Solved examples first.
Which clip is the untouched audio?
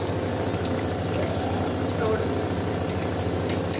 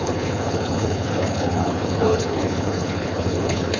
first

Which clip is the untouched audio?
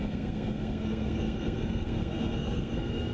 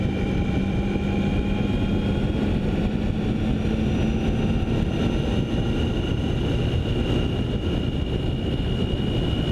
second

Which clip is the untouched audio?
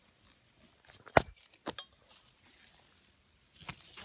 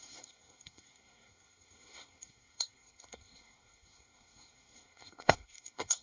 first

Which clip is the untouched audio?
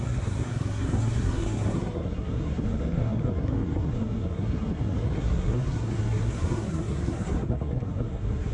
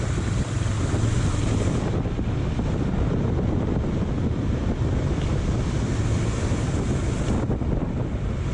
second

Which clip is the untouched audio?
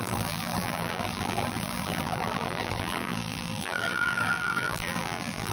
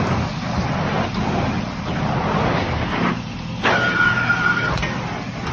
second